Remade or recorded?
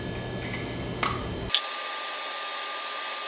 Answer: recorded